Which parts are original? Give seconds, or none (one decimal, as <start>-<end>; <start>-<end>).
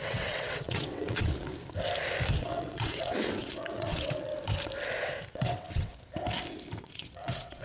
1.5-2.3; 4.3-5.3; 5.9-6.8